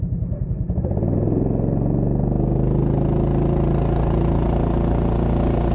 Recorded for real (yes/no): yes